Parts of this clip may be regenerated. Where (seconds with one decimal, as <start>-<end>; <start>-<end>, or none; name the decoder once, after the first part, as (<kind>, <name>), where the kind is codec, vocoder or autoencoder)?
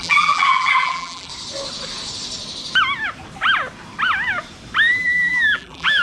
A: 0.0-1.3 (vocoder, BigVGAN v2); 4.9-6.0